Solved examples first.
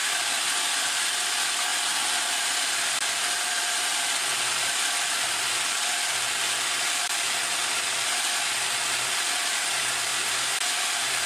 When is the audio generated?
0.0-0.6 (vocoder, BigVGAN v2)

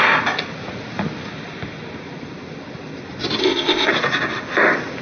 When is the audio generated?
3.4-3.9 (codec, ZipCodec)

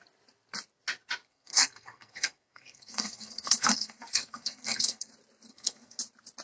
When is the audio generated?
1.3-5.1 (codec, SNAC); 5.5-6.0

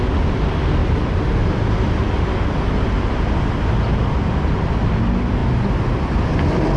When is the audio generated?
none

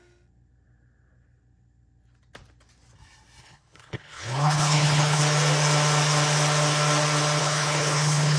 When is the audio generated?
3.4-5.2 (codec, HILCodec); 7.4-8.4

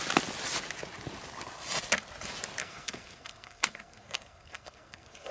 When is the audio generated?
2.6-5.3 (codec, SNAC)

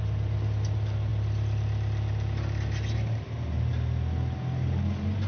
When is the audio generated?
none